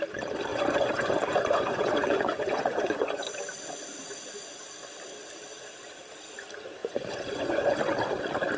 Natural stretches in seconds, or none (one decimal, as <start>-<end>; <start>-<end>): 0.0-0.5; 3.4-6.8; 8.0-8.6